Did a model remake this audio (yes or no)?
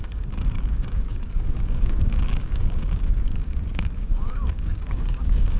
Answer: yes